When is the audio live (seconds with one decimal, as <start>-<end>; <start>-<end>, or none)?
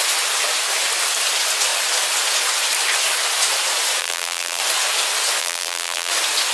0.0-4.0; 4.6-5.4; 6.1-6.5